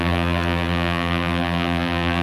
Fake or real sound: fake